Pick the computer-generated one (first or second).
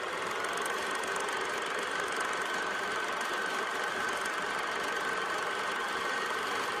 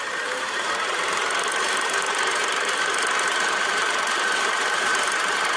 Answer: second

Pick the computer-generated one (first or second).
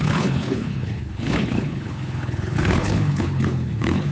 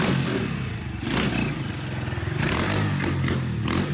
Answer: first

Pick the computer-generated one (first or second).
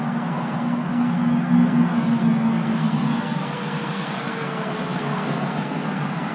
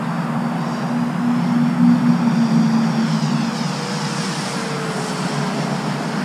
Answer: first